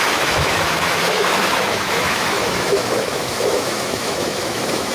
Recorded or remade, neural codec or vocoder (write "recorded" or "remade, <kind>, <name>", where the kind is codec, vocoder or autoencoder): remade, autoencoder, DAC-VAE